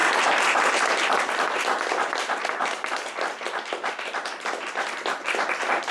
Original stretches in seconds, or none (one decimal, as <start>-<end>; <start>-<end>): 0.0-5.9